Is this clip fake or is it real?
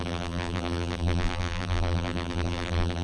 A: fake